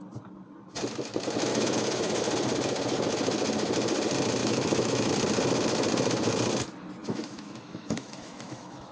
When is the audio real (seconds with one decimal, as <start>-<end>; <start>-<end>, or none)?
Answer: 0.0-1.5; 2.2-4.4; 5.1-7.0